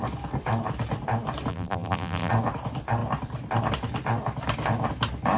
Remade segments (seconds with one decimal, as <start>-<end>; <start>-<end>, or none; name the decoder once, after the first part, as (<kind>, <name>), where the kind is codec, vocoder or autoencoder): 1.5-2.3 (vocoder, BigVGAN v2)